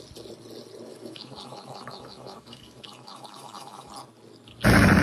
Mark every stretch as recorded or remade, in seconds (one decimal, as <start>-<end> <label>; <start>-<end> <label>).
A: 0.0-0.9 recorded; 0.9-3.9 remade; 3.9-5.0 recorded